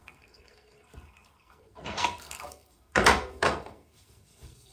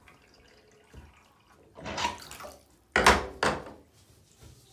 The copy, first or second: first